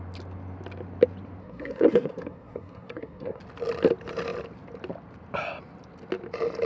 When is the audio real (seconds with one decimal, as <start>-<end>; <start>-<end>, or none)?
0.0-1.4; 3.4-6.7